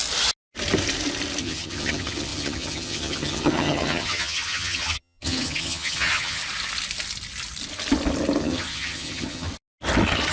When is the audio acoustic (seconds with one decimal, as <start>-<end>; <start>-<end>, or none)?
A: 0.0-1.4; 6.4-8.4; 9.5-10.3

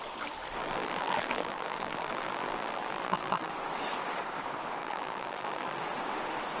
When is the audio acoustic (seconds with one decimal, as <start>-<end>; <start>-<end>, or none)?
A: 0.0-0.6; 3.5-4.8; 5.8-6.6

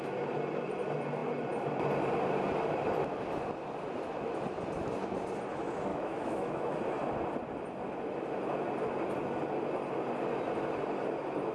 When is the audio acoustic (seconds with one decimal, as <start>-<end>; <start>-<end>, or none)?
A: 0.0-5.9; 6.8-11.5

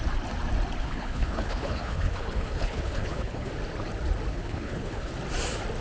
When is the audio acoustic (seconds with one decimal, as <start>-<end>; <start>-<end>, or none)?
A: 0.0-0.8; 3.5-4.3; 5.1-5.8

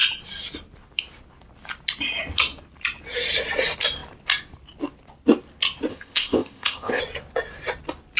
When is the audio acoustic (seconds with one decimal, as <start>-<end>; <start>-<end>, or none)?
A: 0.0-5.9; 7.0-8.2

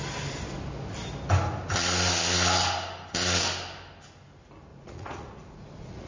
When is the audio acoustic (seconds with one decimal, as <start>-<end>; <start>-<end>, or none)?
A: 0.0-4.7

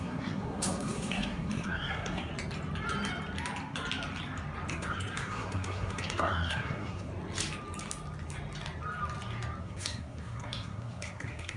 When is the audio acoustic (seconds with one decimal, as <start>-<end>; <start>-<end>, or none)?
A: 2.3-4.7; 7.1-9.6